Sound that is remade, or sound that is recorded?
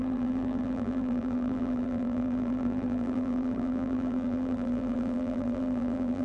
remade